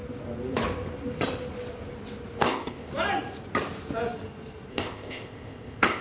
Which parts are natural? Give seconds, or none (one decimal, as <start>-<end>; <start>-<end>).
0.0-2.4; 2.9-4.7